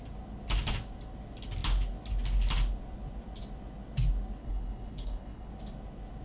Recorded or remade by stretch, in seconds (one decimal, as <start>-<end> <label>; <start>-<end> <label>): 0.0-4.4 recorded; 4.4-5.5 remade; 5.5-6.2 recorded